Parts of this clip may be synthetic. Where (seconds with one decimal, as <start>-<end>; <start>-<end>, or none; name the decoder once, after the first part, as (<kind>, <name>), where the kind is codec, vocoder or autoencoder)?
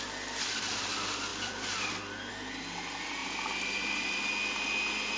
3.2-4.3 (vocoder, BigVGAN v2)